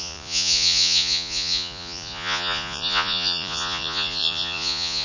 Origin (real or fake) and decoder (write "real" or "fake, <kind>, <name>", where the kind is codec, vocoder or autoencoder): fake, vocoder, Vocos